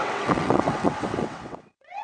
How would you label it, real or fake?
fake